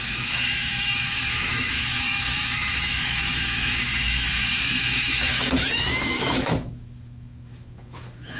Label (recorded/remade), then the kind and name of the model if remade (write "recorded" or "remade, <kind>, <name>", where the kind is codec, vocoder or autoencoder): remade, autoencoder, DAC-VAE